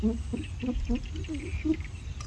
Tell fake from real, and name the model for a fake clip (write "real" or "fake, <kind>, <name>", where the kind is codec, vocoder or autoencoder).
real